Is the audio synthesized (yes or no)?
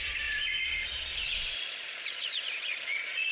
yes